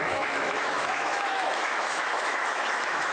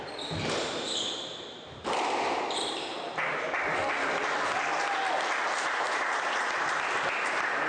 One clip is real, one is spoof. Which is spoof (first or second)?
first